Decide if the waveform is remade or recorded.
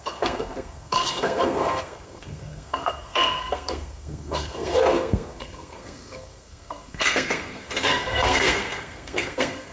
remade